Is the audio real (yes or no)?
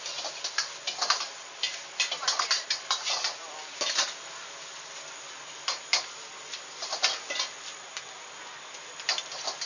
yes